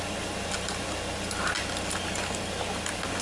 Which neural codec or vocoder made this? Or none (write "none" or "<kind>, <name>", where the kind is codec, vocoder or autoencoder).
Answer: none